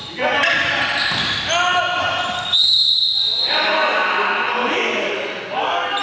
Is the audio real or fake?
real